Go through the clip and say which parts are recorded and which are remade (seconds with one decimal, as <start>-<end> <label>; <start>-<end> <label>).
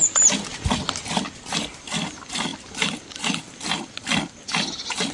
0.0-5.1 recorded